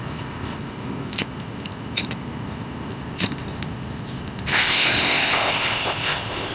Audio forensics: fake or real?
fake